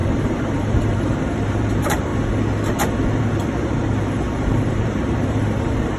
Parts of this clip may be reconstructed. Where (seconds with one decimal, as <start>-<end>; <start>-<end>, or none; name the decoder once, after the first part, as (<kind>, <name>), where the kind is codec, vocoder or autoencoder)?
0.0-2.1 (vocoder, BigVGAN v2); 3.2-6.0